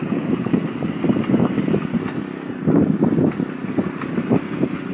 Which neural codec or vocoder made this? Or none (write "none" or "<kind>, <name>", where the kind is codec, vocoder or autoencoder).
none